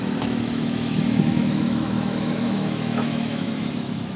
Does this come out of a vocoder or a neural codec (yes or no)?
yes